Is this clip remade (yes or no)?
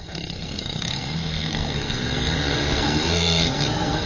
yes